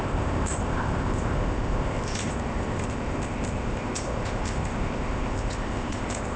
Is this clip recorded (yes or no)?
no